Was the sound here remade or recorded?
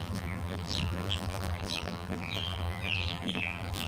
remade